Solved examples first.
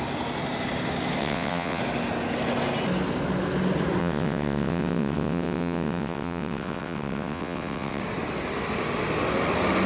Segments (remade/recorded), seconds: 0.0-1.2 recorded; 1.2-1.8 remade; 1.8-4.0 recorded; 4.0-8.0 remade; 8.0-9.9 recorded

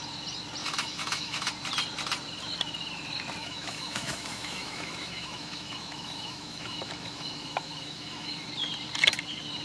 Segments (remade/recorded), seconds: 0.0-0.6 recorded; 0.6-1.5 remade; 1.5-3.4 recorded; 3.4-8.5 remade; 8.5-9.6 recorded

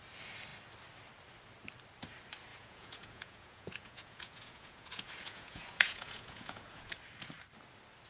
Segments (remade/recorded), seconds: 0.0-2.5 recorded; 2.5-6.9 remade; 6.9-8.1 recorded

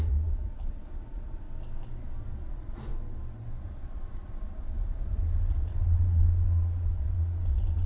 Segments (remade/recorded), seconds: 0.0-1.5 remade; 1.5-2.5 recorded; 2.5-2.9 remade; 2.9-3.6 recorded; 3.6-7.9 remade

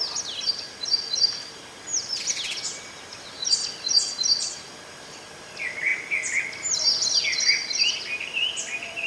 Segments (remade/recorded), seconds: 0.0-9.1 recorded

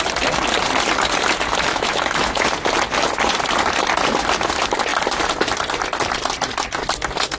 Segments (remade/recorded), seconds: 0.0-1.7 recorded; 1.7-2.4 remade; 2.4-7.4 recorded